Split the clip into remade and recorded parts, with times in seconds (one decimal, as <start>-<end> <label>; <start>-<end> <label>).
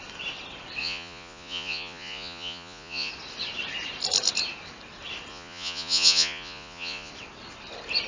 0.0-0.8 recorded; 0.8-3.1 remade; 3.1-5.3 recorded; 5.3-7.1 remade; 7.1-8.1 recorded